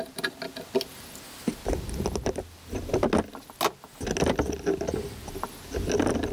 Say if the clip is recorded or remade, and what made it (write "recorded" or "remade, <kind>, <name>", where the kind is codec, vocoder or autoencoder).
recorded